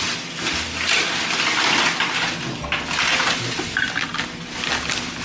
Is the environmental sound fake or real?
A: real